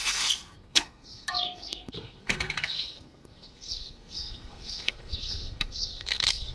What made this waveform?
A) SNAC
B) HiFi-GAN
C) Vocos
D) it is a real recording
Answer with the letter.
A